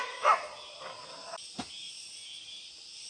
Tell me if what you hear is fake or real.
real